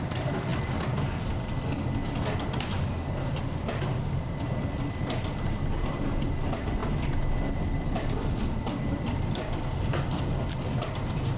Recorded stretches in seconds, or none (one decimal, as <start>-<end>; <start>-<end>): 0.5-4.2; 6.8-7.3